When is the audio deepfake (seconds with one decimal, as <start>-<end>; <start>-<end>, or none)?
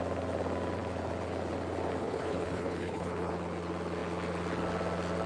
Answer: 2.0-3.3